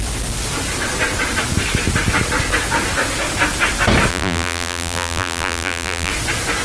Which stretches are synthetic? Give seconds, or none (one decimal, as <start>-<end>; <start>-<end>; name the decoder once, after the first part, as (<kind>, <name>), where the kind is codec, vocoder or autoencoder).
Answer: 4.1-6.1 (vocoder, BigVGAN v2)